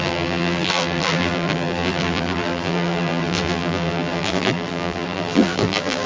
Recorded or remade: remade